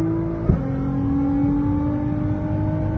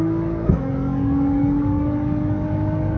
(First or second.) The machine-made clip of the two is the second